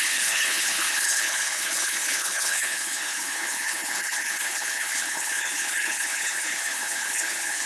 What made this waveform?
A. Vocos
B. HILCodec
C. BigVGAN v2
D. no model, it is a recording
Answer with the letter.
B